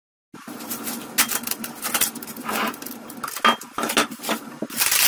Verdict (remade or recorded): recorded